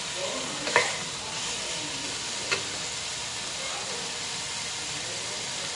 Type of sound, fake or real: real